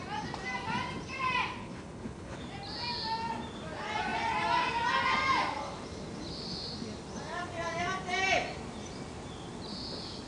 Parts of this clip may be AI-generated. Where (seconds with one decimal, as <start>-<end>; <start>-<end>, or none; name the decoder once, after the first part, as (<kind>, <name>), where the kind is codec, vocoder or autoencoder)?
1.6-2.4 (codec, HILCodec)